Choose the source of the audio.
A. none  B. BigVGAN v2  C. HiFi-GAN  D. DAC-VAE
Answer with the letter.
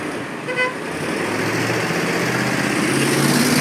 A